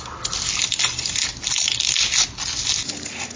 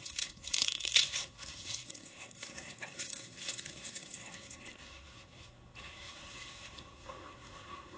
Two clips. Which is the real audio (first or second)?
first